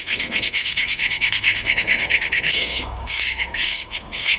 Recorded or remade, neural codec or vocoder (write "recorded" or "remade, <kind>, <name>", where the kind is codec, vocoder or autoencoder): remade, codec, SNAC